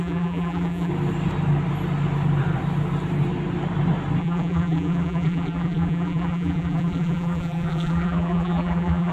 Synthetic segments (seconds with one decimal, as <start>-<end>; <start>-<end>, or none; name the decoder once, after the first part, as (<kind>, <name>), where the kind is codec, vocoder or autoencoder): 0.0-0.9 (vocoder, BigVGAN v2); 4.2-9.1